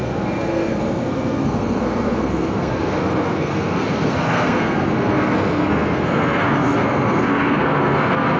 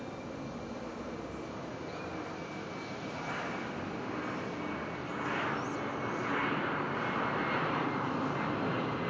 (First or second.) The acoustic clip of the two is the second